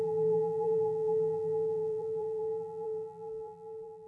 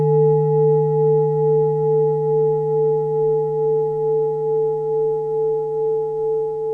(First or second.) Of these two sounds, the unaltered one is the second